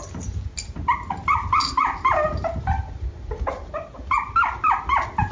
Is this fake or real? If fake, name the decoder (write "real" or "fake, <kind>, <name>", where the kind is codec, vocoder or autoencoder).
real